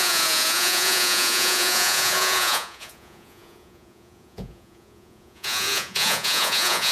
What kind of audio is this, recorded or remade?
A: remade